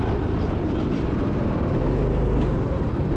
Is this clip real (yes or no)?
yes